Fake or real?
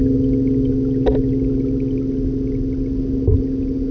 real